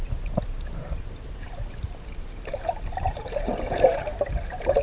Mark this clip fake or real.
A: fake